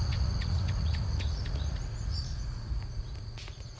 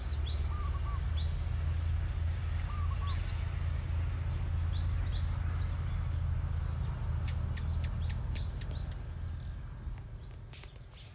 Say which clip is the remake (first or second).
first